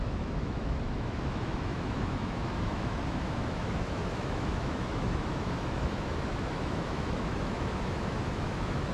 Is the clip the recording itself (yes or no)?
no